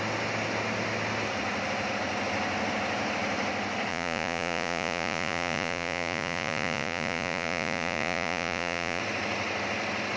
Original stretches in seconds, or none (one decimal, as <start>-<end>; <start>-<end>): 0.0-3.9; 9.0-10.2